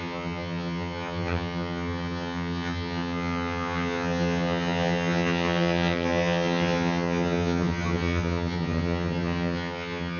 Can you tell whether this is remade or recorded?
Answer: remade